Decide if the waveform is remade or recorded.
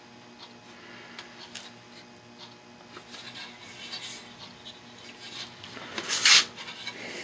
recorded